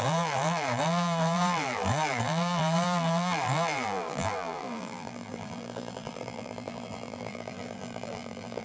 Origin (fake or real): fake